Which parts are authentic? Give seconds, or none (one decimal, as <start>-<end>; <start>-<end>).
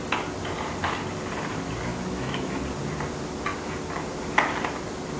0.0-1.9; 2.6-5.2